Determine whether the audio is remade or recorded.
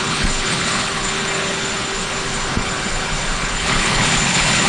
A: remade